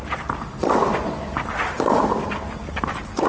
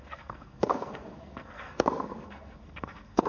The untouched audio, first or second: first